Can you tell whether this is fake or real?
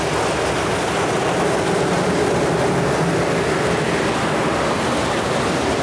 real